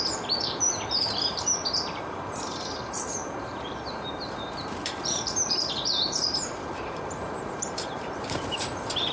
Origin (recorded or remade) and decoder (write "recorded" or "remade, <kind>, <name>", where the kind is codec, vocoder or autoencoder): remade, vocoder, BigVGAN v2